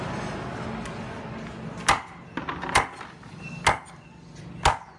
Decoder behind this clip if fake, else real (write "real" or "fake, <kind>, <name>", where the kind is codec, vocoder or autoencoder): real